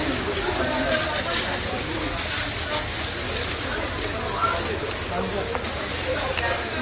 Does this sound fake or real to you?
real